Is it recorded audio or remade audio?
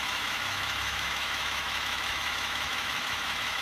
remade